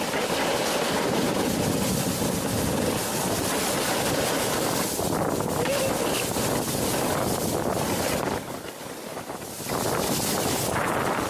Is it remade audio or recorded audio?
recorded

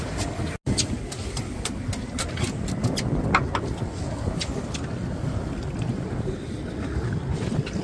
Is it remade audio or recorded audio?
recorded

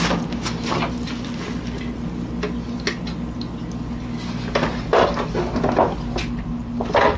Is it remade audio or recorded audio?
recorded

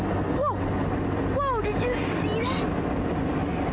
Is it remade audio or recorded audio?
recorded